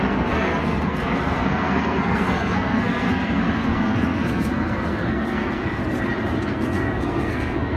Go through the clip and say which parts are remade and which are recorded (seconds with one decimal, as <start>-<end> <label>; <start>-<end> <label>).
0.0-5.8 remade; 5.8-6.4 recorded; 6.4-7.8 remade